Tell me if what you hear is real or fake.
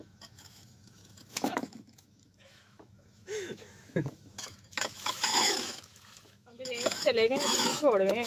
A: fake